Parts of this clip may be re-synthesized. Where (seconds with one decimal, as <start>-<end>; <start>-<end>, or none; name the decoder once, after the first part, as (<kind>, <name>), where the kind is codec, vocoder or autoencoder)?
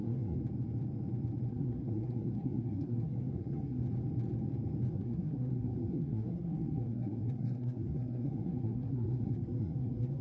0.0-0.4 (codec, SNAC); 1.5-3.8; 4.9-10.2